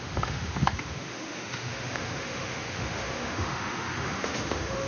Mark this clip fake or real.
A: fake